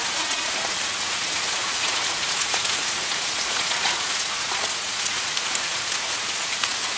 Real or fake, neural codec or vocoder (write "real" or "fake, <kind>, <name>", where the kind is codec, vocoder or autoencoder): fake, vocoder, Vocos